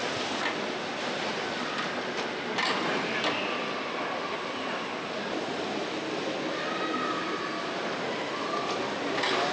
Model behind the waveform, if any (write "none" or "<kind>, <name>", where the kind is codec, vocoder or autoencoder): none